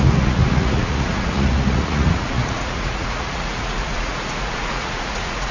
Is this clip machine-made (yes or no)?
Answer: yes